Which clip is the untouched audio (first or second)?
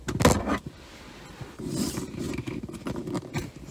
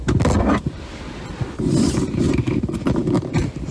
first